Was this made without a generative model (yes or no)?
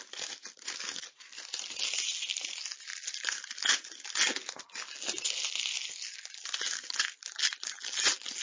yes